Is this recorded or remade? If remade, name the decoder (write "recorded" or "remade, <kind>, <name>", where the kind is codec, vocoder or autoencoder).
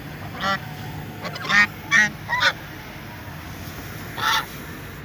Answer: recorded